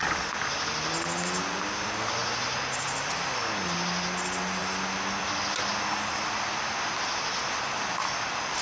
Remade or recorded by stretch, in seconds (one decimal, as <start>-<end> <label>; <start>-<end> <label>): 0.0-8.6 recorded